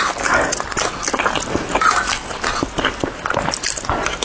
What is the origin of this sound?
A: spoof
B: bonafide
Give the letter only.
B